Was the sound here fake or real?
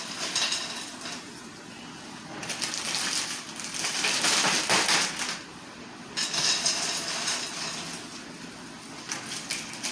real